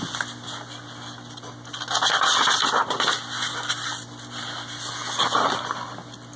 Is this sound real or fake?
real